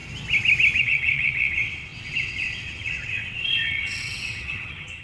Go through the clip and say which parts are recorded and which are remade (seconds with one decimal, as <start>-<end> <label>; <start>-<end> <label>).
0.0-0.8 recorded; 0.8-5.0 remade